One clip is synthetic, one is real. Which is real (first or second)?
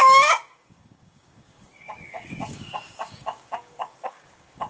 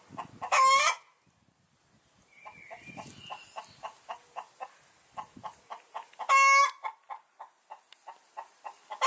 second